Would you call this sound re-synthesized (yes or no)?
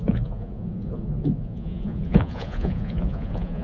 yes